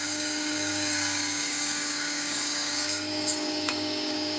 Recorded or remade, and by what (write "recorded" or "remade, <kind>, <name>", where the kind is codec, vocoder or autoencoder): remade, codec, DAC